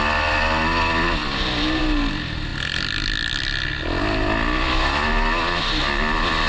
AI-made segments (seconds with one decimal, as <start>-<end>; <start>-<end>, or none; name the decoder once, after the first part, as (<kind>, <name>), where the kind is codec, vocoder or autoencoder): none